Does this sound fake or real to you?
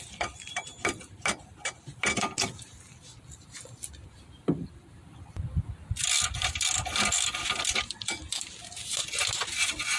real